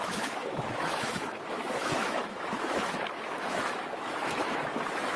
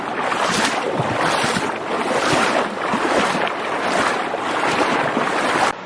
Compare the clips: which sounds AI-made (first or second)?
first